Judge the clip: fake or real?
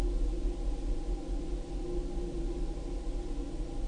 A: real